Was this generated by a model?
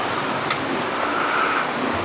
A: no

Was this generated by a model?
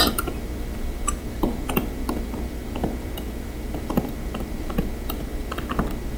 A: yes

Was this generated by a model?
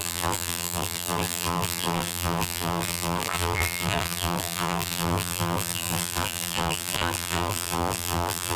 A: yes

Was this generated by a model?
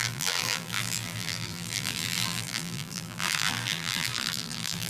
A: yes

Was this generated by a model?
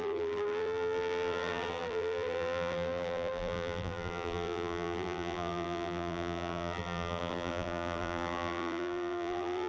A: yes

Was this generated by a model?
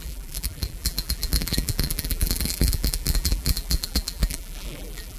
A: yes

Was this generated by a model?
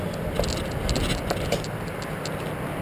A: no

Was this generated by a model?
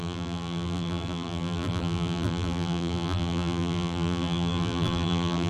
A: yes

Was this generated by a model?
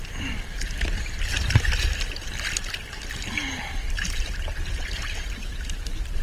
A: no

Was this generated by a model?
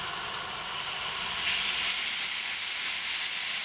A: no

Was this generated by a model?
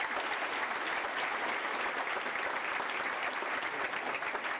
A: no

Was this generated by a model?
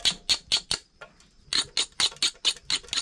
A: no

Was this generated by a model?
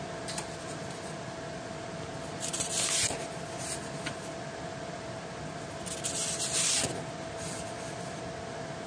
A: no